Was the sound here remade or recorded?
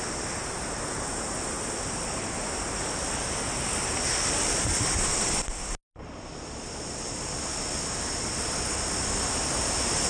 recorded